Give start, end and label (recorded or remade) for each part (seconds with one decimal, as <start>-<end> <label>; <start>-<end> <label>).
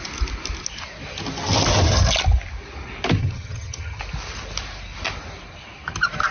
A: 0.0-3.2 recorded; 3.2-4.0 remade; 4.0-6.3 recorded